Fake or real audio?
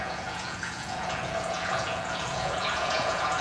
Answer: fake